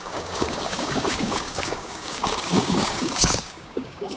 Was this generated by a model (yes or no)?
yes